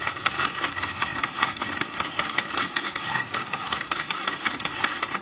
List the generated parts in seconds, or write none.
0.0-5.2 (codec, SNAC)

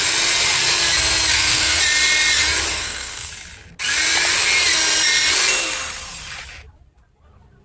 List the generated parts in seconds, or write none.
1.3-1.8 (codec, SNAC); 2.7-3.3

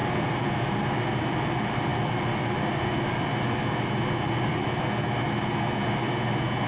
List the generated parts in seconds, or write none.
none